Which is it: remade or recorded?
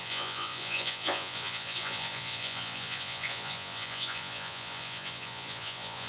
remade